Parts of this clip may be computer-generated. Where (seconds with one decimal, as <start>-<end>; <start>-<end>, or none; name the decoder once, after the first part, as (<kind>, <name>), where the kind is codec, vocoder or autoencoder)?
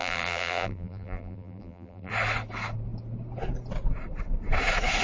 0.0-2.1 (vocoder, BigVGAN v2)